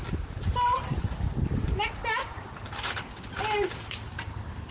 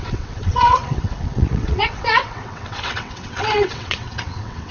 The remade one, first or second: second